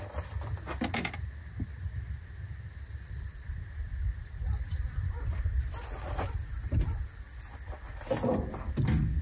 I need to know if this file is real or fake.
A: real